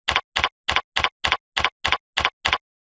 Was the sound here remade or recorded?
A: recorded